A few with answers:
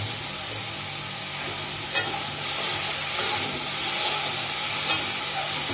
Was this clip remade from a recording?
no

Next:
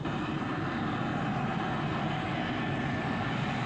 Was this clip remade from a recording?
no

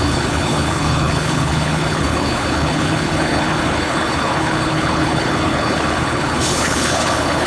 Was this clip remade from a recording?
yes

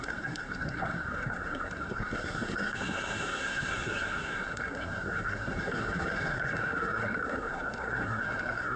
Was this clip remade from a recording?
yes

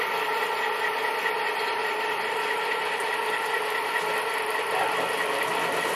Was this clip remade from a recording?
no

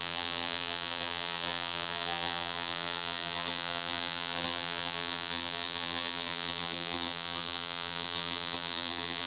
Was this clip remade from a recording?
yes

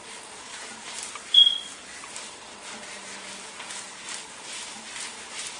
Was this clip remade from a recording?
no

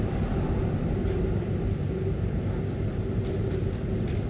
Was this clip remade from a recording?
no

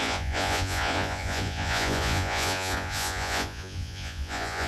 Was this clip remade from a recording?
yes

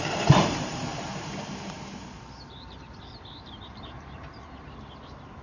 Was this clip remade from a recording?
yes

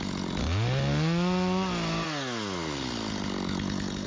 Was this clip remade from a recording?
no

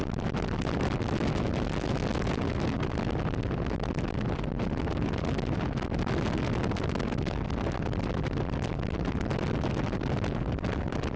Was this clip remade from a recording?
no